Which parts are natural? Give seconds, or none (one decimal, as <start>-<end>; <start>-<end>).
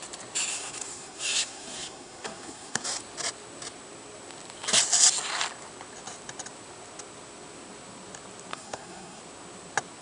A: 0.0-0.5; 3.0-8.5; 9.2-10.0